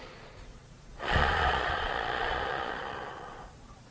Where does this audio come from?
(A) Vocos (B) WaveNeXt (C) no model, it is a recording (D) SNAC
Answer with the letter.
A